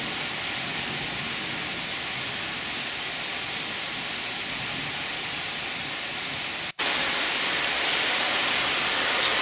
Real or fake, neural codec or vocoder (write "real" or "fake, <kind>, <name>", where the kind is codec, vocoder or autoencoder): real